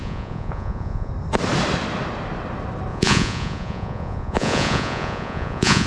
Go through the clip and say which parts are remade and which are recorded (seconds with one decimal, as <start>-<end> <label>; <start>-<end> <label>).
0.0-1.1 remade; 1.1-2.9 recorded; 2.9-5.9 remade